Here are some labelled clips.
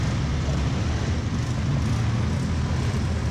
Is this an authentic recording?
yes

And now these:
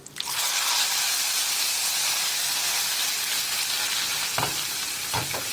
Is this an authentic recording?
yes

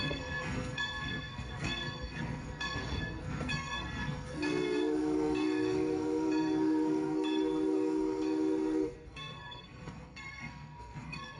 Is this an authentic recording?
no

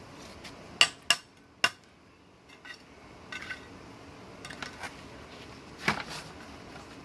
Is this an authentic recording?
yes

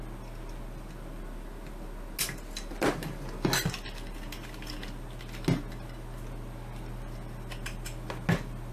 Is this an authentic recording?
yes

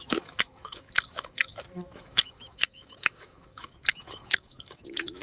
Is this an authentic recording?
no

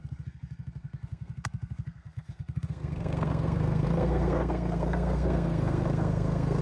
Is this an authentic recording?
no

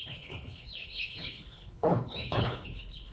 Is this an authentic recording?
no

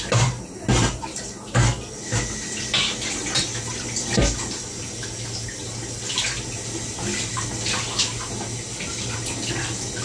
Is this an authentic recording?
yes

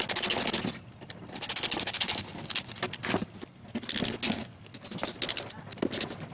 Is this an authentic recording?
yes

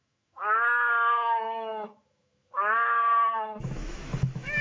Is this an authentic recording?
no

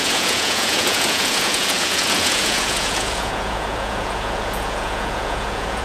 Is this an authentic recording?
no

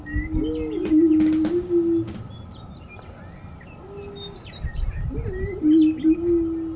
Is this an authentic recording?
yes